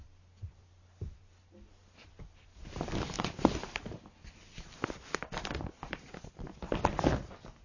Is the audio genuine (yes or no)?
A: yes